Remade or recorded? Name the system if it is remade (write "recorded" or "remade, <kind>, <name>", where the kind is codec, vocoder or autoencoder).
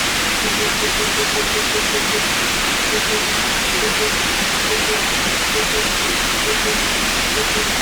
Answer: recorded